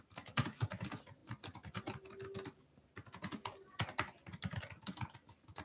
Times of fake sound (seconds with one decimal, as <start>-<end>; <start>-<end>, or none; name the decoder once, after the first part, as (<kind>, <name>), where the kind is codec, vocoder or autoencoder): none